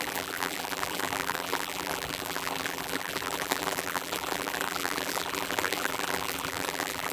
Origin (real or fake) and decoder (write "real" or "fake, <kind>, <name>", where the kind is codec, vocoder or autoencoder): fake, vocoder, BigVGAN v2